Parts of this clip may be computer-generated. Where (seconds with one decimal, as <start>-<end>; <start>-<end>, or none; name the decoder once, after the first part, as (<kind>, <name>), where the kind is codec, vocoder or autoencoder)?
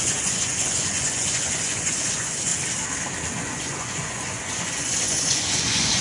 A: 0.0-2.5 (vocoder, Vocos); 3.3-6.0